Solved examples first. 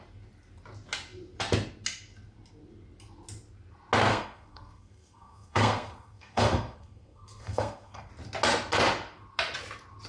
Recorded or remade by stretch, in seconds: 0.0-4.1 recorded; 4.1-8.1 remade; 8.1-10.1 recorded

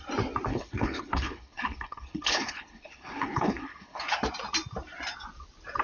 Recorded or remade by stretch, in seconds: 0.0-0.5 recorded; 0.5-4.0 remade; 4.0-5.8 recorded

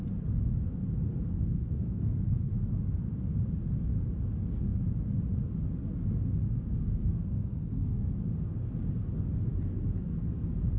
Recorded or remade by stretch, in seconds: 0.0-1.1 recorded; 1.1-2.5 remade; 2.5-7.0 recorded; 7.0-8.1 remade; 8.1-10.8 recorded

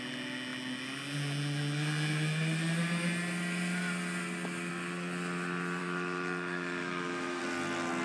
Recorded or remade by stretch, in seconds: 0.0-5.8 recorded; 5.8-7.4 remade; 7.4-8.0 recorded